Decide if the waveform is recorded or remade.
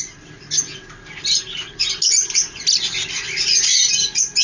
recorded